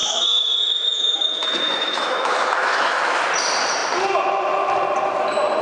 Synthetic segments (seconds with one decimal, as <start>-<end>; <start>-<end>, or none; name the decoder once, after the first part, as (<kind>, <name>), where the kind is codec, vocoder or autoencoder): 0.0-3.2 (autoencoder, DAC-VAE)